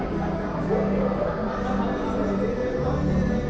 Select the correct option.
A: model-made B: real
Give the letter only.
B